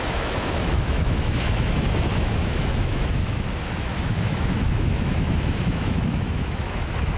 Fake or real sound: fake